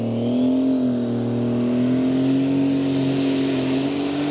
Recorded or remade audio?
recorded